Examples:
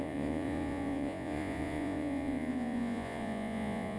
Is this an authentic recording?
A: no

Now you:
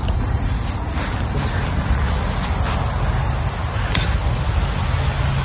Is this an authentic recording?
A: yes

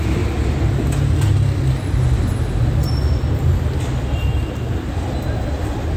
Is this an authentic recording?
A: yes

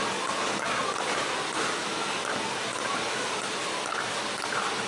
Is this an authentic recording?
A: yes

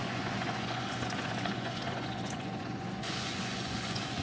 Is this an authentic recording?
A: no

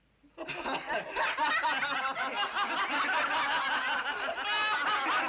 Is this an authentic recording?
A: yes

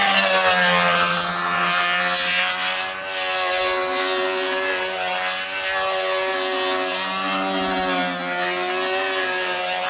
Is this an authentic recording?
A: yes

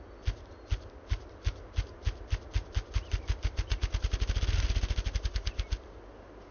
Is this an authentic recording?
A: yes